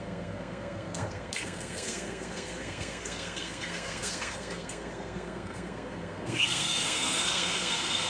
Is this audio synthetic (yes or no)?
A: yes